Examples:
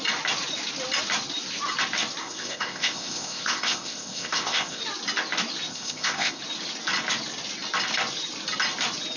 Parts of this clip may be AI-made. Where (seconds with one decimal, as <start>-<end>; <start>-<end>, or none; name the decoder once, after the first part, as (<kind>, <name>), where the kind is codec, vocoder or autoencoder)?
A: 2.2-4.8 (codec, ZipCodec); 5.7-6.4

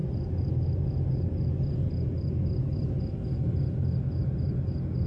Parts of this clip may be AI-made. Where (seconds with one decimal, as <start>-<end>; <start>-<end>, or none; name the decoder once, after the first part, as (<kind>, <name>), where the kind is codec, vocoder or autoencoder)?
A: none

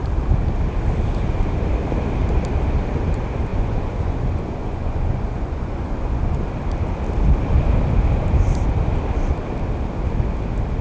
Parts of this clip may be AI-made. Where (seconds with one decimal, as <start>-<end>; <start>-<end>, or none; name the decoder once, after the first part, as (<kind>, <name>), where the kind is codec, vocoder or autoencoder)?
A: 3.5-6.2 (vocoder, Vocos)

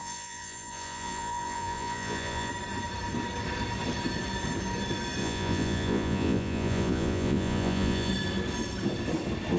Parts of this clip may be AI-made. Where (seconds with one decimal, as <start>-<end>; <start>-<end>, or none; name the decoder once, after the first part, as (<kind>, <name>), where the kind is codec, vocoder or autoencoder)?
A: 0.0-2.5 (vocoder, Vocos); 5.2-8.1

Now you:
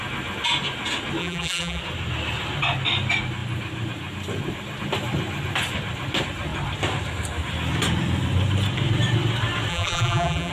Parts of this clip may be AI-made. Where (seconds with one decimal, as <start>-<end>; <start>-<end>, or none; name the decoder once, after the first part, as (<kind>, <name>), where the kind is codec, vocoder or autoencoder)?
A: 1.2-1.8 (vocoder, BigVGAN v2); 9.7-10.5